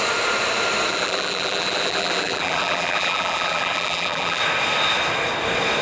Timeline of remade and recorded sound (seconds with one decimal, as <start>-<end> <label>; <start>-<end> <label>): 0.0-0.9 recorded; 0.9-4.4 remade; 4.4-5.8 recorded